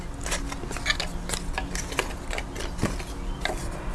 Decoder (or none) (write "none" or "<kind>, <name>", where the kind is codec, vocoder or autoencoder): none